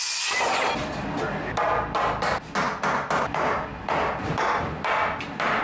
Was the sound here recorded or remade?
recorded